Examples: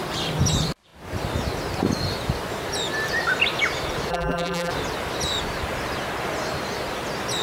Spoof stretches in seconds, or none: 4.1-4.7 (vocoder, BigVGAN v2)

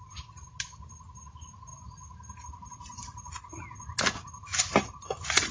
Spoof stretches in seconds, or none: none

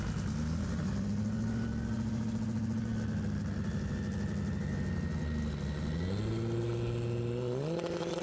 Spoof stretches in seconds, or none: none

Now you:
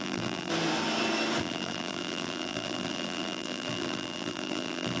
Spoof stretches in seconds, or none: 0.0-0.5 (vocoder, BigVGAN v2); 1.4-5.0

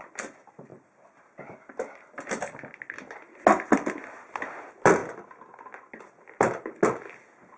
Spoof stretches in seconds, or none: none